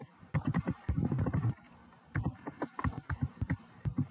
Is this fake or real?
fake